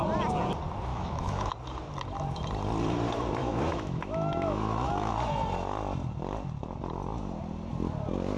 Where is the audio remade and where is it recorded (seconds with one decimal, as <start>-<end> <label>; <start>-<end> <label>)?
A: 0.0-0.9 recorded; 0.9-1.5 remade; 1.5-3.4 recorded; 3.4-5.1 remade; 5.1-8.4 recorded